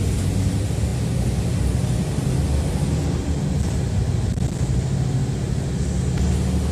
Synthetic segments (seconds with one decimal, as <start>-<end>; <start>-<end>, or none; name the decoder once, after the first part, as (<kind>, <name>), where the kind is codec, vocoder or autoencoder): none